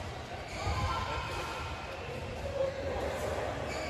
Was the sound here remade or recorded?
recorded